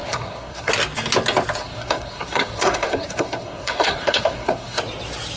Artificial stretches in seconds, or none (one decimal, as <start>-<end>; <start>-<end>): 0.0-0.7; 1.6-4.8